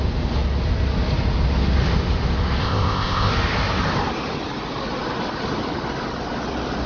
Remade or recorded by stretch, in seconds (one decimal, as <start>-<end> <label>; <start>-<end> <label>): 0.0-2.6 recorded; 2.6-3.3 remade; 3.3-6.9 recorded